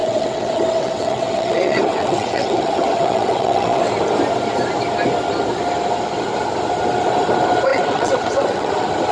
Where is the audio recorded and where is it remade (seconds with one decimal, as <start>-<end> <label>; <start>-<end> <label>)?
0.0-3.9 remade; 3.9-7.7 recorded; 7.7-8.7 remade; 8.7-9.1 recorded

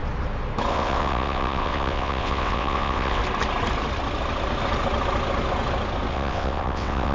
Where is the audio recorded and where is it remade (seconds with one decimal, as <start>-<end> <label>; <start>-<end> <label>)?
0.0-0.7 recorded; 0.7-3.2 remade; 3.2-6.1 recorded; 6.1-7.1 remade

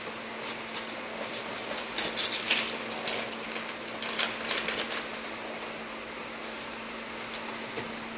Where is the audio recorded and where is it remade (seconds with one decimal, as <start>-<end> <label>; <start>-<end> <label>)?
0.0-8.2 recorded

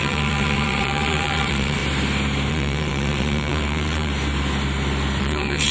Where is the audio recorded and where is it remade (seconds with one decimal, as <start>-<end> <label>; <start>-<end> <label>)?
0.0-1.8 remade; 1.8-2.5 recorded; 2.5-4.1 remade; 4.1-5.2 recorded; 5.2-5.7 remade

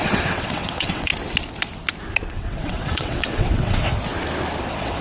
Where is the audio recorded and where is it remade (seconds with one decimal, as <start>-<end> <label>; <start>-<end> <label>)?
0.0-1.1 remade; 1.1-2.3 recorded; 2.3-3.9 remade; 3.9-4.6 recorded; 4.6-5.0 remade

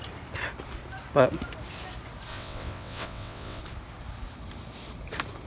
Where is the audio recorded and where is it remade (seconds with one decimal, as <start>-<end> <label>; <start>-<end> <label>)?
0.0-2.3 recorded; 2.3-3.6 remade; 3.6-5.5 recorded